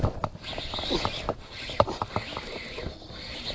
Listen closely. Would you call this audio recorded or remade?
recorded